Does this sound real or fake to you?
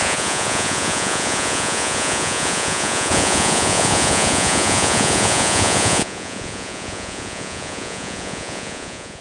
fake